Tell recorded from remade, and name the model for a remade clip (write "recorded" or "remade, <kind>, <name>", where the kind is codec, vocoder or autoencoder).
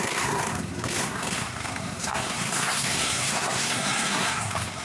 remade, codec, SNAC